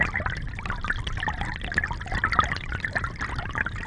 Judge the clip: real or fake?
real